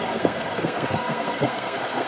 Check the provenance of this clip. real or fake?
fake